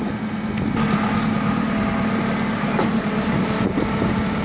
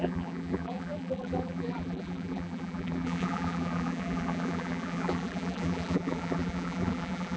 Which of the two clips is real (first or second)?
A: first